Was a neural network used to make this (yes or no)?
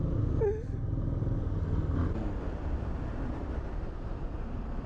no